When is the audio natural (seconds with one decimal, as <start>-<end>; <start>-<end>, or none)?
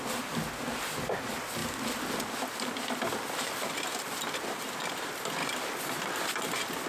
0.0-6.9